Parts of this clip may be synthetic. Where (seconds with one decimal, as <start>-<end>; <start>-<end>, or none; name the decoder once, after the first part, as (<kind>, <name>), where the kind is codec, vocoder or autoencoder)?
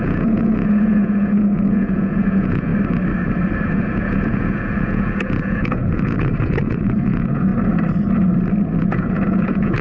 0.0-2.7 (vocoder, Vocos); 3.7-7.5; 8.8-9.8